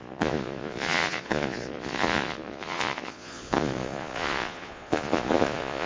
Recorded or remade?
remade